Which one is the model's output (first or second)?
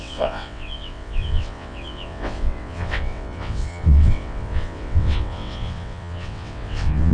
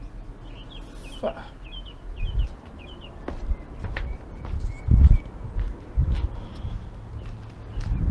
first